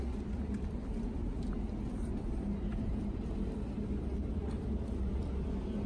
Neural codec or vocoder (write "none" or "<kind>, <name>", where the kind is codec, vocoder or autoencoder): vocoder, BigVGAN v2